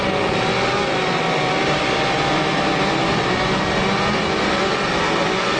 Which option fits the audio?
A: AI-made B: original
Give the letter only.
B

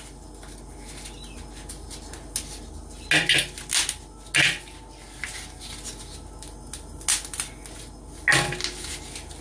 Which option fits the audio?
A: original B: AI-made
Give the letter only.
A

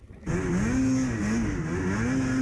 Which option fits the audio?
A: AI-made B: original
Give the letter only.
B